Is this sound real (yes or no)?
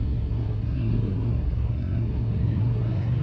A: no